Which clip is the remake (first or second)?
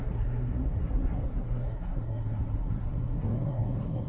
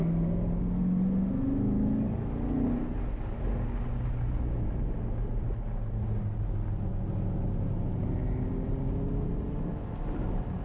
first